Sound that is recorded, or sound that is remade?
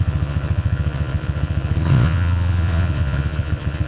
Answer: remade